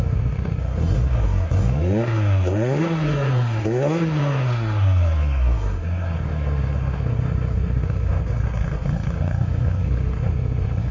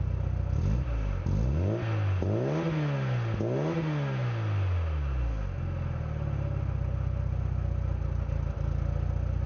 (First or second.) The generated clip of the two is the first